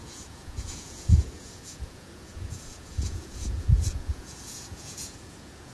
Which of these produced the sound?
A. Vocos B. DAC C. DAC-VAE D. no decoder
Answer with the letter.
A